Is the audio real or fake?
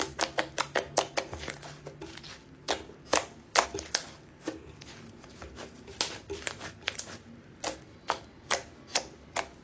real